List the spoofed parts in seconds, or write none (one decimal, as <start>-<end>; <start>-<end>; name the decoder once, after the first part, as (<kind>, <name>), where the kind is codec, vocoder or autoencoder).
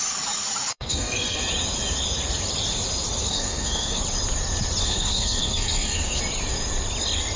0.7-1.4 (codec, SNAC); 3.2-4.0; 4.8-6.2